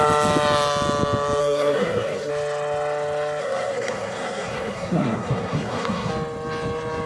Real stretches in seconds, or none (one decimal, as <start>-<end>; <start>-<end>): 0.0-1.4; 2.3-3.4; 6.1-7.1